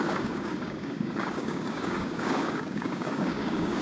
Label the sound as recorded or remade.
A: remade